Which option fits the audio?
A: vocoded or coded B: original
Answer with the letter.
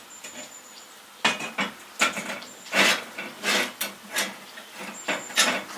B